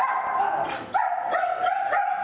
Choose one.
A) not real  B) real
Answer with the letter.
B